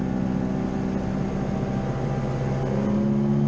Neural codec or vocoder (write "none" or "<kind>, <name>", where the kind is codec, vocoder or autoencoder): none